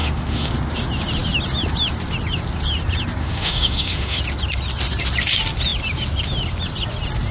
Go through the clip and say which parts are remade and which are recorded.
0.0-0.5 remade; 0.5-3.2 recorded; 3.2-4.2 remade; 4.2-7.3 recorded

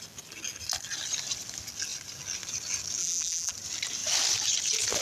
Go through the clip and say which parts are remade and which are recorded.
0.0-3.0 recorded; 3.0-3.5 remade; 3.5-5.0 recorded

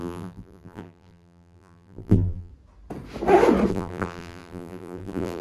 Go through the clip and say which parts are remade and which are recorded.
0.0-2.5 remade; 2.5-3.7 recorded; 3.7-5.4 remade

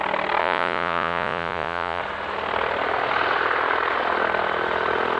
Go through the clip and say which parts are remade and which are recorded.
0.0-0.4 recorded; 0.4-2.0 remade; 2.0-5.2 recorded

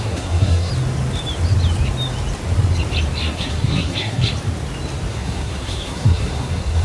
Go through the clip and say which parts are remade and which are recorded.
0.0-0.7 remade; 0.7-3.2 recorded; 3.2-4.3 remade; 4.3-5.1 recorded; 5.1-6.8 remade

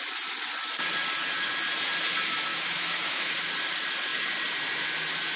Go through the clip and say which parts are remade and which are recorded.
0.0-2.5 recorded; 2.5-3.3 remade; 3.3-5.4 recorded